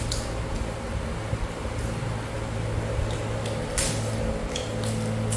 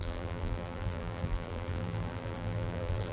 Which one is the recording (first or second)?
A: first